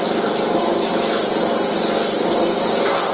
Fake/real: real